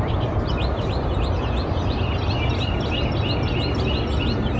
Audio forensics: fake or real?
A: real